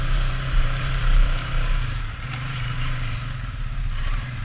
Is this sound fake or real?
fake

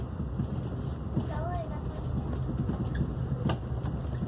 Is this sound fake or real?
real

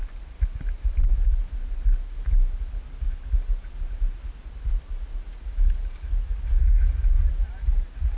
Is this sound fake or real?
real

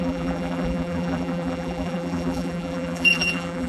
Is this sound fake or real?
fake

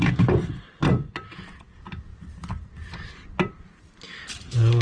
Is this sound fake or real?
real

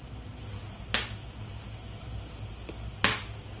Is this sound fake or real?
real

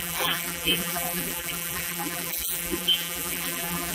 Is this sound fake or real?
fake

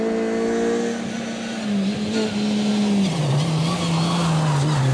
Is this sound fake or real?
real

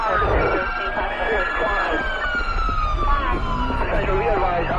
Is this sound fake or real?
real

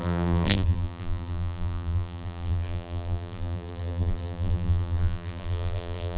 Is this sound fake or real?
fake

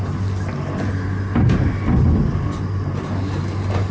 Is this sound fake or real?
real